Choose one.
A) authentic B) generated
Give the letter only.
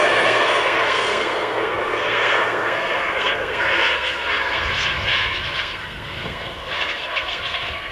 B